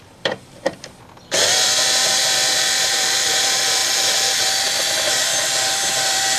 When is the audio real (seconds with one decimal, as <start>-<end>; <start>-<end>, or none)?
3.8-4.4; 5.3-5.9